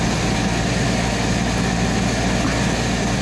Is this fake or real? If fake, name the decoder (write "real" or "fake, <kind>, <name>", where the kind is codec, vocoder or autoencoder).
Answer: real